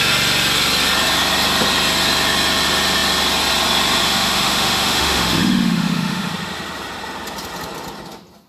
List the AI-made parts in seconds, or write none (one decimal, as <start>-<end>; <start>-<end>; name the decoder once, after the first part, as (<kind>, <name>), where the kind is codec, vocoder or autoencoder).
4.0-6.3 (autoencoder, DAC-VAE)

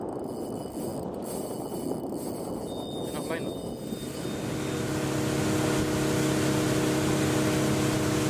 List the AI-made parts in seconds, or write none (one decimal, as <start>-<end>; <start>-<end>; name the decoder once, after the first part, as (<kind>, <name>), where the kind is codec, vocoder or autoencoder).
none

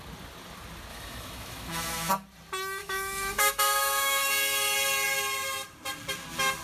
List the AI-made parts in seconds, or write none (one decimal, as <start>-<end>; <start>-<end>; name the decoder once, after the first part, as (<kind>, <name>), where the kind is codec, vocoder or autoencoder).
0.9-2.1 (autoencoder, DAC-VAE); 2.8-4.3

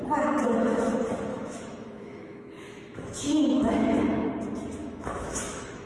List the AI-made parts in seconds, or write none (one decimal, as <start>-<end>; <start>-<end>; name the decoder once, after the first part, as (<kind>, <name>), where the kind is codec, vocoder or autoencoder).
1.3-4.3 (autoencoder, DAC-VAE); 4.8-5.9

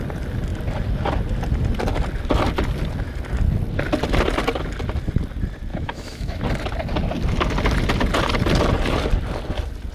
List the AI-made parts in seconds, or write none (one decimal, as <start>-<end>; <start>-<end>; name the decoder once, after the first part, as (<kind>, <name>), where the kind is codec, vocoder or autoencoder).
5.7-6.4 (autoencoder, DAC-VAE)